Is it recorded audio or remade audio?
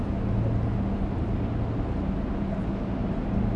recorded